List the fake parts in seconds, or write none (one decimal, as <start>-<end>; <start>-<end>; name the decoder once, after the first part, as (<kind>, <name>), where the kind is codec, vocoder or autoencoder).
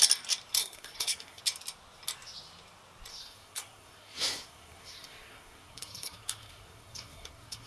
0.6-1.4 (codec, SNAC); 3.1-7.7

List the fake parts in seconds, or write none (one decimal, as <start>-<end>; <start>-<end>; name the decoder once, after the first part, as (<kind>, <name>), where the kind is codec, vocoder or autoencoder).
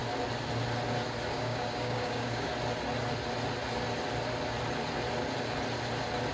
1.3-2.5 (codec, DAC)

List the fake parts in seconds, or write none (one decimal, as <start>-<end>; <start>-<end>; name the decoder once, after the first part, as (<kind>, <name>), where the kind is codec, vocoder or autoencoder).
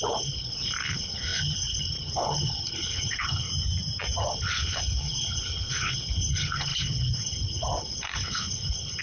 0.0-3.5 (codec, HILCodec); 4.2-9.0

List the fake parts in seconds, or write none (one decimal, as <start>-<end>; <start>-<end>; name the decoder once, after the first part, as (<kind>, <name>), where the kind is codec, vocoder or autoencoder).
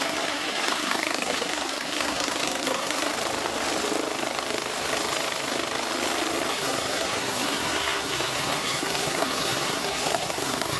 0.0-3.1 (codec, SNAC); 6.5-10.8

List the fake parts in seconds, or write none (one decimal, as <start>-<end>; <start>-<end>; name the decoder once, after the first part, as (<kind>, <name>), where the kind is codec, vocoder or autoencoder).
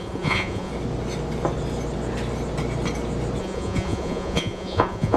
0.0-0.7 (vocoder, Vocos); 3.4-5.2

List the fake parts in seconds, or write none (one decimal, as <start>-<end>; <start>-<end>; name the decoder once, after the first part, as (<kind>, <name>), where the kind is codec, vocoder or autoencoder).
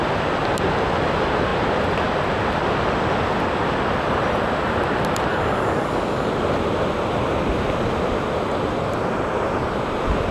5.3-6.3 (codec, DAC)